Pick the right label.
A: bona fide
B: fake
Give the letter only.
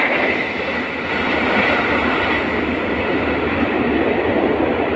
A